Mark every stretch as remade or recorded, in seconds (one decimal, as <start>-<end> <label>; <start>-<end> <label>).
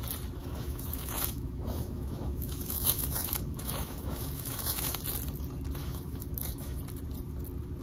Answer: 0.0-0.4 recorded; 0.4-5.0 remade; 5.0-5.8 recorded; 5.8-6.8 remade; 6.8-7.8 recorded